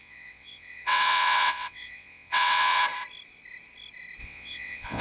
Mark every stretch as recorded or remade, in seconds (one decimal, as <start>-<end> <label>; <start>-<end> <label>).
0.0-2.8 remade; 2.8-4.2 recorded; 4.2-5.0 remade